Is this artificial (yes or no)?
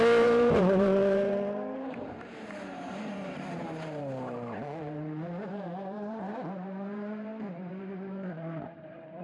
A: yes